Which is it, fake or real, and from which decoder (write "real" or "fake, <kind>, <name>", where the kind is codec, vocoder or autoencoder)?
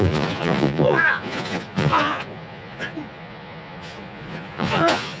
fake, vocoder, Vocos